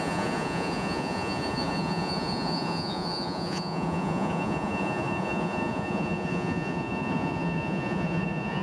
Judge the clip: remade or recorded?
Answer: remade